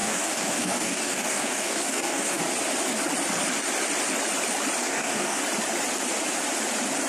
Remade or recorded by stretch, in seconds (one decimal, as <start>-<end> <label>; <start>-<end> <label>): 0.0-2.4 remade; 2.4-4.8 recorded; 4.8-5.4 remade; 5.4-7.1 recorded